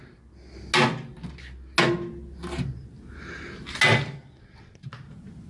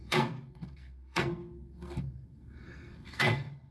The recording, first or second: first